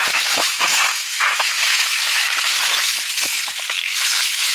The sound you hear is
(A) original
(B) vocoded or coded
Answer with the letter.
B